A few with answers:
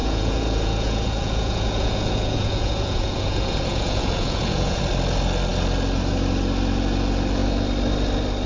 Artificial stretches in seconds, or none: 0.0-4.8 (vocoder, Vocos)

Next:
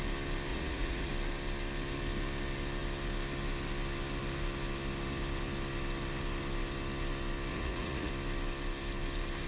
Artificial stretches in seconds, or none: 0.5-1.1 (vocoder, Vocos); 7.5-8.1